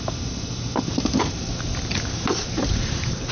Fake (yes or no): no